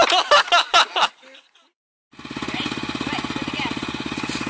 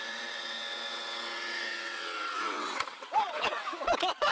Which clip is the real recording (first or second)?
first